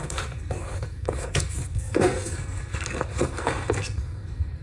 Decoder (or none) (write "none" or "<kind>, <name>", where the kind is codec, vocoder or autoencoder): codec, SNAC